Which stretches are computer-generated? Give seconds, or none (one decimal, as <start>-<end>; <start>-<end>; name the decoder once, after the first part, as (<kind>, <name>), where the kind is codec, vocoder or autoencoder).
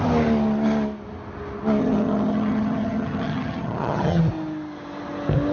1.8-4.2 (vocoder, HiFi-GAN)